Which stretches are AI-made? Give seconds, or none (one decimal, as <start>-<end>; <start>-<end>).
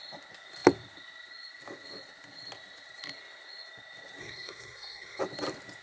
4.2-5.2